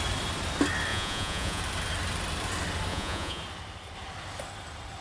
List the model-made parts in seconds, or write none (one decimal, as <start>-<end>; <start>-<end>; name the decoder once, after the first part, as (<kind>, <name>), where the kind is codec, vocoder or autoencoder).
0.9-1.6 (vocoder, Vocos); 2.9-3.4